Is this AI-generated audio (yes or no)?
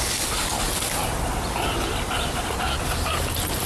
no